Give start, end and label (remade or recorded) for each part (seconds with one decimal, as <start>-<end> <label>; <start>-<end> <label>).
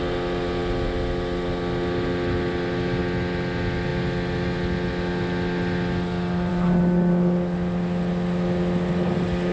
0.0-9.5 recorded